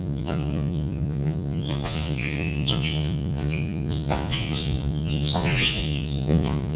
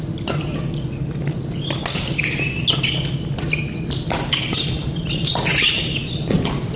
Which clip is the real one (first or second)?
second